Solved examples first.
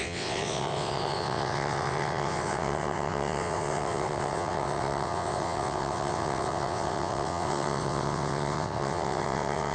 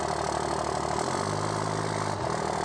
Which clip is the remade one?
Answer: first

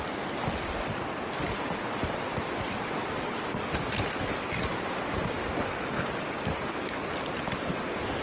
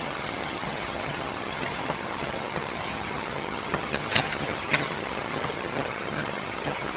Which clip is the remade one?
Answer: second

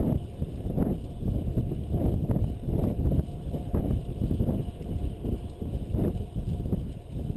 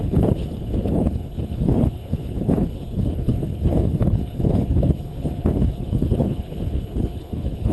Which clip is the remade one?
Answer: second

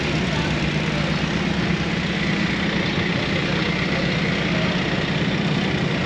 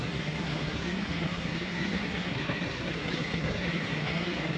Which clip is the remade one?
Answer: second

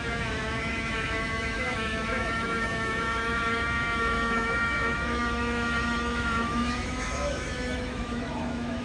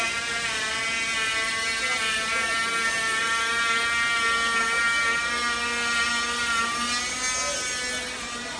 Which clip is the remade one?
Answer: first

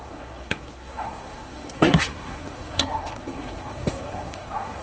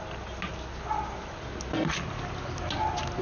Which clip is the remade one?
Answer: first